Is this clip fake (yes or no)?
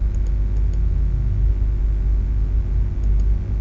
no